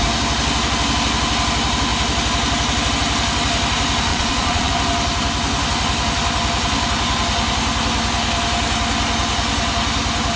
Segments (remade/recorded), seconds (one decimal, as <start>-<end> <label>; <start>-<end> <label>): 0.0-4.1 recorded; 4.1-4.7 remade; 4.7-10.4 recorded